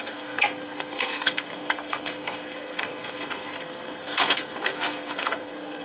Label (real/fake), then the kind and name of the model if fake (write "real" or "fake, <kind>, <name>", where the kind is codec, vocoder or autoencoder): fake, codec, SNAC